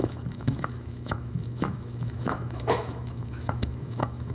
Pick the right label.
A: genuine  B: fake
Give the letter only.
B